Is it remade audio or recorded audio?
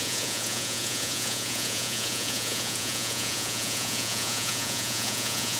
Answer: remade